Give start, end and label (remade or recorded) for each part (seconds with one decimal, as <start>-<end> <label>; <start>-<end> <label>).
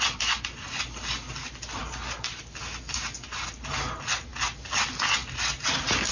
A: 0.0-6.1 recorded